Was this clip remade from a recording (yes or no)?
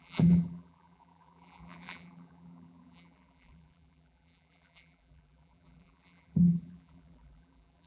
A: yes